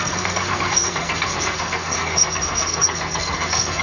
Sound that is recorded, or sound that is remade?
remade